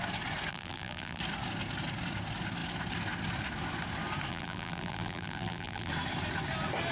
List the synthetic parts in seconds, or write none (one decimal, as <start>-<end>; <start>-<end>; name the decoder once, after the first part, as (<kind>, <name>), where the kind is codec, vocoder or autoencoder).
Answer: 0.5-1.2 (vocoder, BigVGAN v2); 4.3-5.9